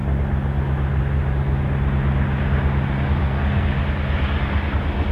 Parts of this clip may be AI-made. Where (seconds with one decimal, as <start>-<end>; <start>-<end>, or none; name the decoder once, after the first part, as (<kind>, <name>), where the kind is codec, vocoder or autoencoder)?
3.2-3.8 (codec, SNAC)

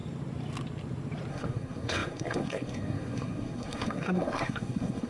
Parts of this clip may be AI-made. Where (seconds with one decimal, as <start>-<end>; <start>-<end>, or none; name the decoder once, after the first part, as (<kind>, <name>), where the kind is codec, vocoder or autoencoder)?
1.3-5.1 (codec, SNAC)